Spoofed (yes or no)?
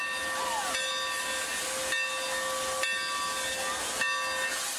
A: no